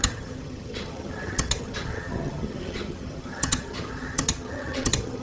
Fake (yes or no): yes